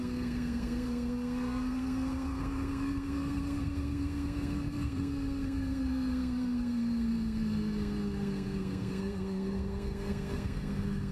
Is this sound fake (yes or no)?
yes